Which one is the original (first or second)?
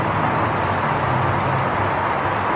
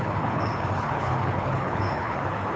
first